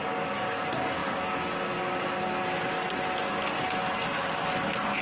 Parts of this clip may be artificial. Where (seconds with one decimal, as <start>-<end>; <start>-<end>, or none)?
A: none

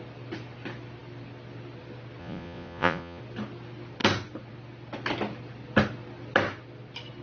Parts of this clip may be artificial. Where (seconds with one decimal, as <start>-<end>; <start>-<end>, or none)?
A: 2.2-3.2

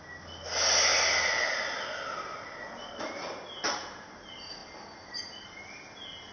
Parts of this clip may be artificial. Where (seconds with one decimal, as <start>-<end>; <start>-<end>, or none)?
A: none

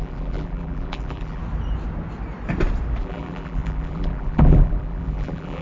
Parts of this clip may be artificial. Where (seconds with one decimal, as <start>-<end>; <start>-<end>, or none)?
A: 0.0-1.4; 3.0-5.6